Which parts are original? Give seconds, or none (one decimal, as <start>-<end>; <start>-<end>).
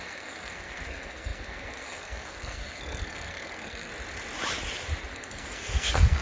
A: 3.9-5.1